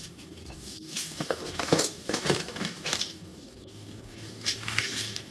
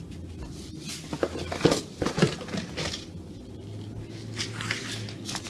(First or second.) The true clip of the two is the second